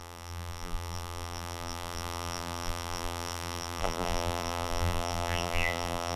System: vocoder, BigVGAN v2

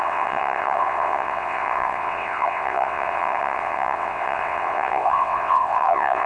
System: vocoder, WaveNeXt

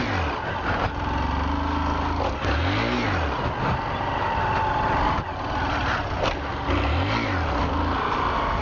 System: none